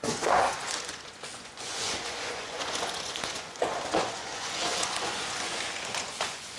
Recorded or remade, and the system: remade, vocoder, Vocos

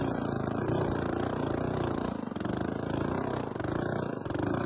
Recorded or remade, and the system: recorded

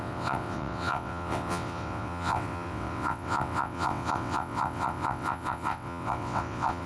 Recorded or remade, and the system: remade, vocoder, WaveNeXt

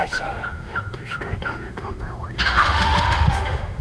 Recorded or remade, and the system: remade, autoencoder, DAC-VAE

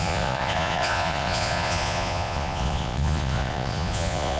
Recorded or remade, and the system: remade, vocoder, Vocos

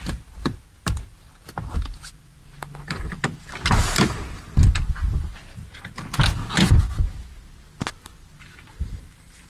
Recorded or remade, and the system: recorded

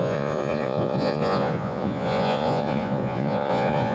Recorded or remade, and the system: remade, vocoder, Vocos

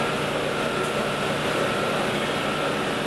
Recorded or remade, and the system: recorded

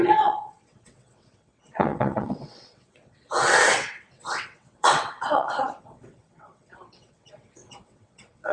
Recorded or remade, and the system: remade, vocoder, WaveNeXt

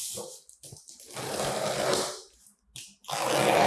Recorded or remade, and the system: recorded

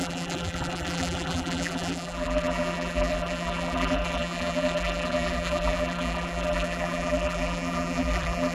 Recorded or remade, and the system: remade, vocoder, BigVGAN v2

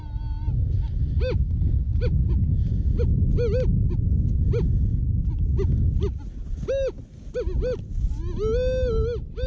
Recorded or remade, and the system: recorded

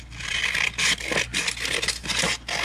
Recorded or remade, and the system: recorded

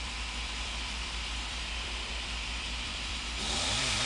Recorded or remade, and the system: remade, vocoder, BigVGAN v2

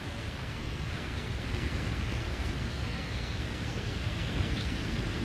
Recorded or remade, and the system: remade, codec, SNAC